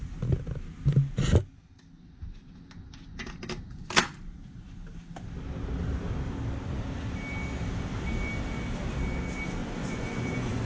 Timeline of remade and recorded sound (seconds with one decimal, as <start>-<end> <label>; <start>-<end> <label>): 0.0-9.6 recorded; 9.6-10.6 remade

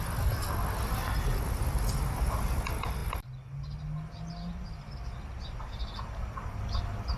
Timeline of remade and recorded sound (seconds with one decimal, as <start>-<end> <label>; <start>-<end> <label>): 0.0-7.2 recorded

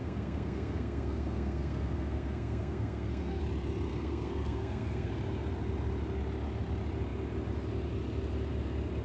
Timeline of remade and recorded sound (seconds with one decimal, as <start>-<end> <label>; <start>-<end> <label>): 0.0-3.4 remade; 3.4-3.9 recorded; 3.9-5.1 remade; 5.1-9.0 recorded